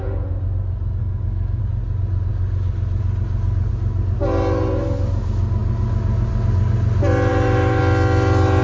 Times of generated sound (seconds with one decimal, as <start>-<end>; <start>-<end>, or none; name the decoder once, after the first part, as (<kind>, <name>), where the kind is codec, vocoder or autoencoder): 1.0-1.6 (autoencoder, DAC-VAE); 7.3-7.8